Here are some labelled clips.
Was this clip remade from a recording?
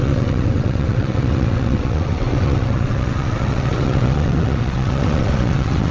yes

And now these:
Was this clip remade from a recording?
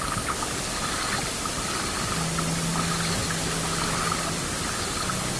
no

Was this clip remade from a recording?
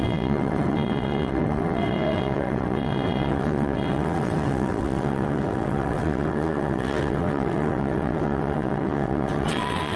yes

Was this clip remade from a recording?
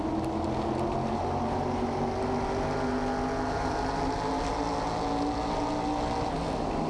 no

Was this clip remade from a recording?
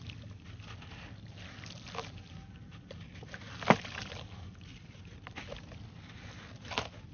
no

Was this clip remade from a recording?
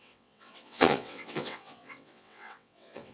yes